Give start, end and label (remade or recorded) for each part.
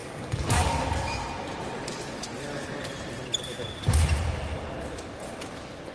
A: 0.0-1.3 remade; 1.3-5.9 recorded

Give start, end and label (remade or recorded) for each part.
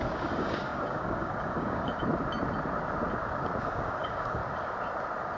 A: 0.0-2.0 remade; 2.0-3.6 recorded; 3.6-4.4 remade; 4.4-5.4 recorded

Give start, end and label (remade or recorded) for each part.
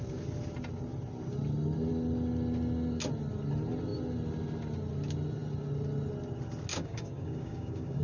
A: 0.0-6.7 recorded; 6.7-8.0 remade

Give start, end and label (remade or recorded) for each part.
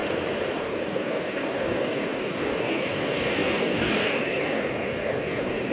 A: 0.0-0.6 recorded; 0.6-5.7 remade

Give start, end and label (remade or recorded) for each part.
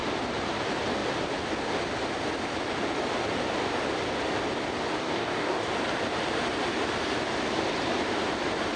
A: 0.0-5.0 recorded; 5.0-5.7 remade; 5.7-8.8 recorded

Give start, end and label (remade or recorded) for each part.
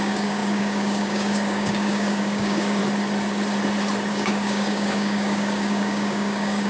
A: 0.0-2.8 remade; 2.8-4.1 recorded; 4.1-6.7 remade